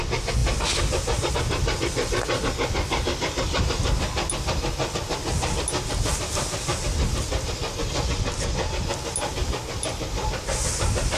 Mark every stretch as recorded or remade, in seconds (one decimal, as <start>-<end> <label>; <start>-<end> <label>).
0.0-11.2 recorded